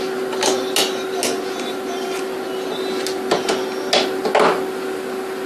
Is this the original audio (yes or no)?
yes